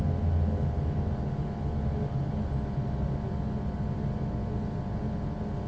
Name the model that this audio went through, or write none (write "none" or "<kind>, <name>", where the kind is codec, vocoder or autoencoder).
none